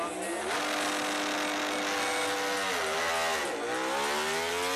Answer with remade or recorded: recorded